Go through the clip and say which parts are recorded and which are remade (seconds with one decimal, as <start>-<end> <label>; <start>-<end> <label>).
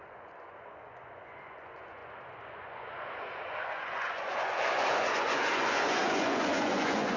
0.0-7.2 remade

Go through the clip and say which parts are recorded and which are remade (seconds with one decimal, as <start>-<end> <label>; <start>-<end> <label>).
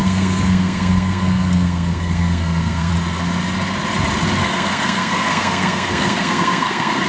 0.0-2.9 remade; 2.9-4.4 recorded; 4.4-7.1 remade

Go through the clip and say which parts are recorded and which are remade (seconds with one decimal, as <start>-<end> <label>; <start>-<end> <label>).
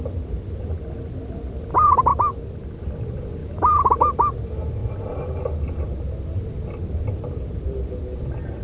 0.0-3.4 recorded; 3.4-3.9 remade; 3.9-8.6 recorded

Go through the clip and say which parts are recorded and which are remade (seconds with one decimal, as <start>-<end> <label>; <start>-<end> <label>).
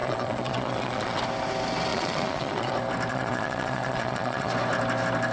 0.0-1.2 remade; 1.2-1.9 recorded; 1.9-2.7 remade; 2.7-3.1 recorded; 3.1-4.5 remade; 4.5-5.3 recorded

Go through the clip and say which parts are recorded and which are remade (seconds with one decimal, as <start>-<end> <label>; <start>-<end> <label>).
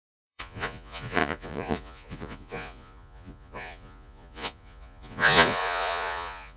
0.0-6.6 remade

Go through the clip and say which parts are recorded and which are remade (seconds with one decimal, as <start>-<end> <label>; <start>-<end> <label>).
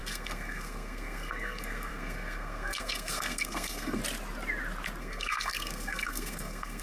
0.0-4.0 remade; 4.0-5.0 recorded; 5.0-6.8 remade